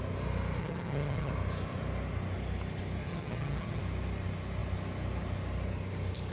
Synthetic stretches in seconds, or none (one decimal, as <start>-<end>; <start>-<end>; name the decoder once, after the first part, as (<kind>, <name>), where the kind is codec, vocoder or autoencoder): 0.6-1.3 (vocoder, HiFi-GAN); 3.0-3.8